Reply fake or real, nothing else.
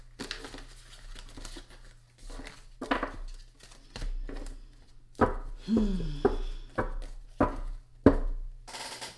real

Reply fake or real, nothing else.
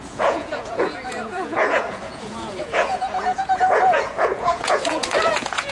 fake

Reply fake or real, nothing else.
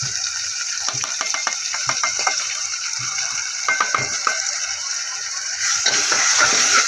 fake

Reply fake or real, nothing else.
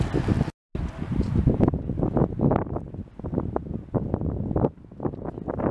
real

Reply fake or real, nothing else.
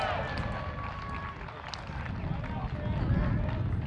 real